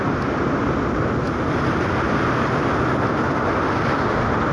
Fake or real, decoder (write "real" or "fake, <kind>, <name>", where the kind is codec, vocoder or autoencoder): real